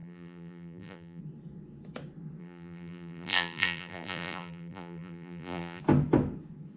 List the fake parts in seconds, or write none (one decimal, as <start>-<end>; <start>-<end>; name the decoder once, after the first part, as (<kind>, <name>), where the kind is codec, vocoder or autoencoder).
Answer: 0.0-1.2 (vocoder, BigVGAN v2); 2.4-5.8